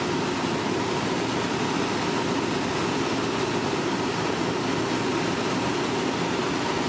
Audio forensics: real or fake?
real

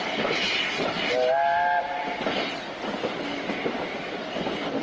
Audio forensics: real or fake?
real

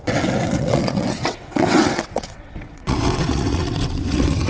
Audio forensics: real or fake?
fake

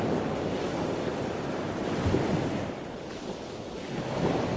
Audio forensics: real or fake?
real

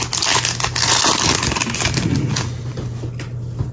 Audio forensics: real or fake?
real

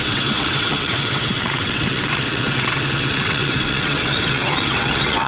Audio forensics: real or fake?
fake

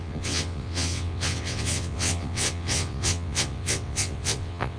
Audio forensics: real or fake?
fake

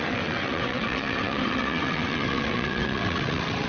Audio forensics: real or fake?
fake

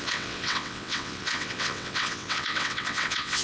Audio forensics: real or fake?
fake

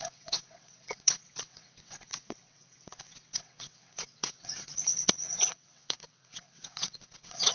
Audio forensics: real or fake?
fake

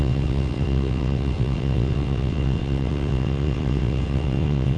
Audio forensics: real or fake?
fake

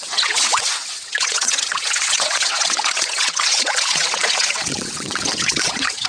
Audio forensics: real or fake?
fake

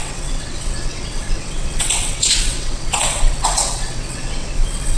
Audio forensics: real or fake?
fake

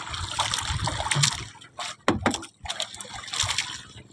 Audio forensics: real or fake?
real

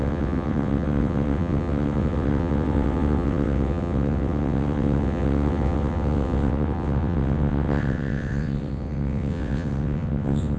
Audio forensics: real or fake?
fake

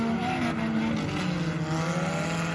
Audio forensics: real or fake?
real